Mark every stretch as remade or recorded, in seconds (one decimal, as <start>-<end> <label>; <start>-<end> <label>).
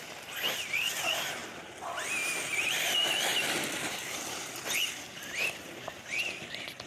0.0-1.4 remade; 1.4-2.9 recorded; 2.9-3.3 remade; 3.3-3.9 recorded; 3.9-6.9 remade